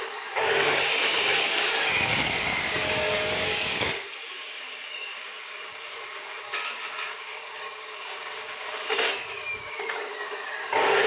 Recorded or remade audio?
remade